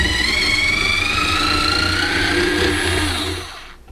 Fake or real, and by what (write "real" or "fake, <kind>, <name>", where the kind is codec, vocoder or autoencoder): real